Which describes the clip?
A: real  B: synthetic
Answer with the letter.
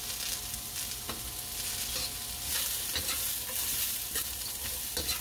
A